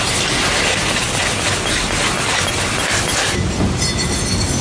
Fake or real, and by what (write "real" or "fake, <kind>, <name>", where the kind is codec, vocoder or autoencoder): real